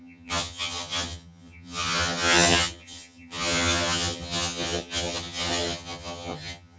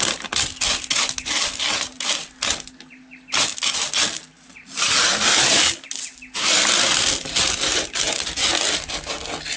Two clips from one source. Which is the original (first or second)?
second